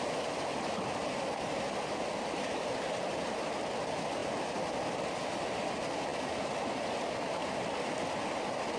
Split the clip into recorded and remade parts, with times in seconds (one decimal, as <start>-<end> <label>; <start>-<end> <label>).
0.0-8.8 recorded